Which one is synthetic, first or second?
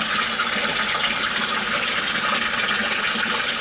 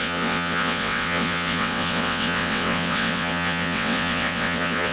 second